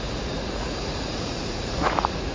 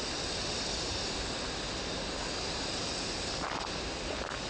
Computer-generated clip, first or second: first